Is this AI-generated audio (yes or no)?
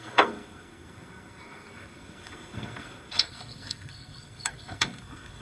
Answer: yes